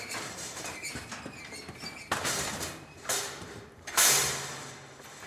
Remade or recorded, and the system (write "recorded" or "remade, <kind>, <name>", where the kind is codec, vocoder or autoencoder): remade, vocoder, BigVGAN v2